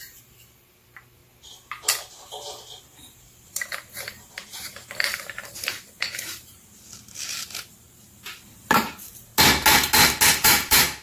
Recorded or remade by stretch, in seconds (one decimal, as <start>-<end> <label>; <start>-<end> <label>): 0.0-1.2 remade; 1.2-2.8 recorded; 2.8-9.3 remade; 9.3-10.3 recorded; 10.3-11.0 remade